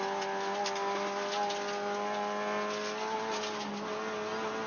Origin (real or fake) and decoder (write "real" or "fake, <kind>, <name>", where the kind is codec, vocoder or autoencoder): real